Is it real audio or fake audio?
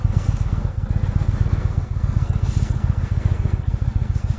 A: fake